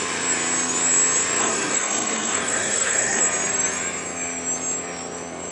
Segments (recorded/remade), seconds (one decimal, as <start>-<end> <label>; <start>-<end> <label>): 0.0-1.4 recorded; 1.4-3.2 remade; 3.2-5.5 recorded